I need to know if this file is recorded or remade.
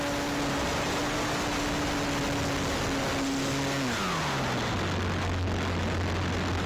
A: recorded